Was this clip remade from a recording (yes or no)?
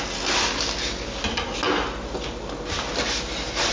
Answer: no